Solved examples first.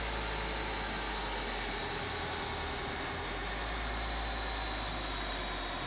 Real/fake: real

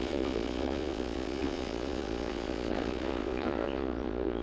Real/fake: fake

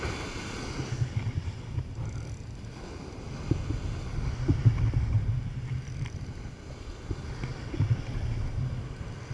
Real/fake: real